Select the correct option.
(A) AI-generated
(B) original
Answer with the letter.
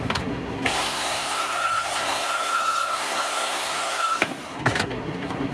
A